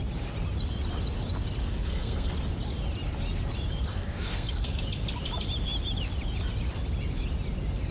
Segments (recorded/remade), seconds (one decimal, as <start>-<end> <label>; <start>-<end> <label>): 0.0-1.6 recorded; 1.6-2.3 remade; 2.3-3.9 recorded; 3.9-4.8 remade; 4.8-7.9 recorded